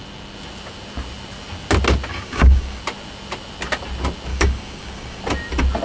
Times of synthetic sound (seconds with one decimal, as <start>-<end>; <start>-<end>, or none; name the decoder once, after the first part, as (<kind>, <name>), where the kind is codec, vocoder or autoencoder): 2.1-2.8 (codec, DAC); 4.3-5.2